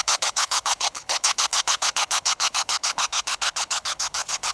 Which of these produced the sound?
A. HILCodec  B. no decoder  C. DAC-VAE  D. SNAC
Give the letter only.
A